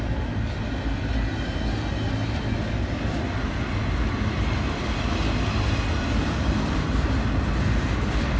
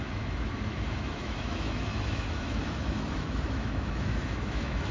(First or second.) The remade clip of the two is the second